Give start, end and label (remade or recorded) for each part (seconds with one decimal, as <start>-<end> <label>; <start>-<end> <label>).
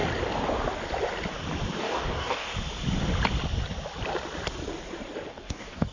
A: 0.0-1.8 recorded; 1.8-2.5 remade; 2.5-5.3 recorded; 5.3-5.9 remade